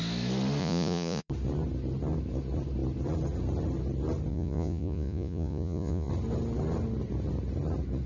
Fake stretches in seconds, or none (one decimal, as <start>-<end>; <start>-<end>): 0.6-1.3; 4.3-6.1